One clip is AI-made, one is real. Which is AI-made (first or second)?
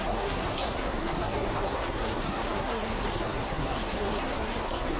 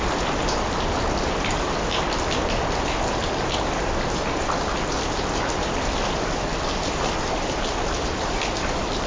first